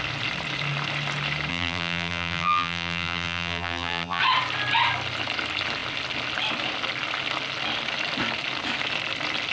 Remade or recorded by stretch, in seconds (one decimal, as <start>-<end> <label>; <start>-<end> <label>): 0.0-1.5 recorded; 1.5-4.2 remade; 4.2-9.5 recorded